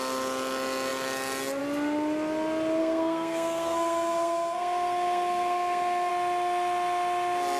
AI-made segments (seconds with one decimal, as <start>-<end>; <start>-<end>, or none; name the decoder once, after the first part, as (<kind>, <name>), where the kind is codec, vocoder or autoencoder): 2.8-6.1 (codec, SNAC)